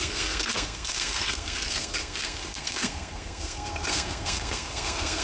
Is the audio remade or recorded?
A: remade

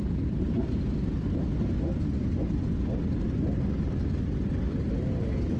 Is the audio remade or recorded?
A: recorded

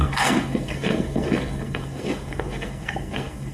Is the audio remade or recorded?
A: remade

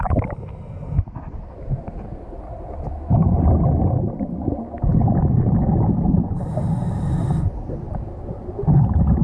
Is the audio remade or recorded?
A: recorded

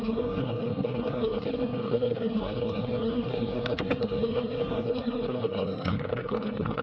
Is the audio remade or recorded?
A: remade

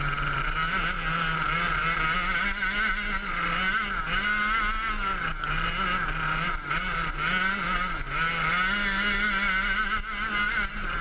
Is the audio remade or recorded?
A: recorded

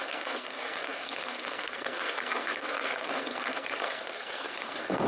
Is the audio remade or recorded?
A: remade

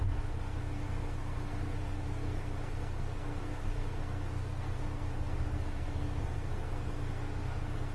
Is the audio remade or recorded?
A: remade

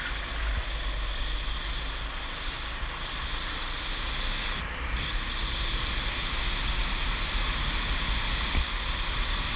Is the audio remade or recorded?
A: recorded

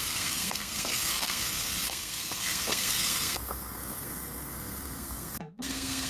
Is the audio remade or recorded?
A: remade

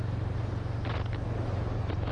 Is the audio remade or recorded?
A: recorded